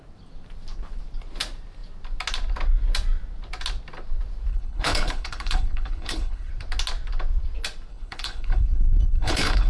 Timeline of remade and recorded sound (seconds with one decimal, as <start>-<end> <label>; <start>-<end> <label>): 0.0-4.5 recorded; 4.5-6.5 remade; 6.5-7.9 recorded; 7.9-9.7 remade